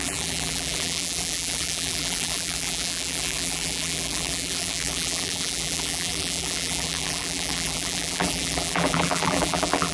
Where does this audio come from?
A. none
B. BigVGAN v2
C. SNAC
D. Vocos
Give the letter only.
B